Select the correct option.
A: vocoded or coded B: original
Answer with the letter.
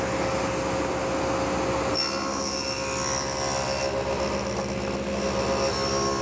B